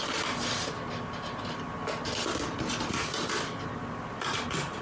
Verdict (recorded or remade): recorded